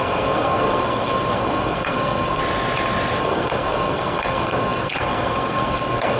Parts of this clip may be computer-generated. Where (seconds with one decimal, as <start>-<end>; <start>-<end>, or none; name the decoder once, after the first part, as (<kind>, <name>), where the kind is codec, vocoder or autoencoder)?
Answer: 0.0-2.4 (codec, SNAC); 3.2-6.2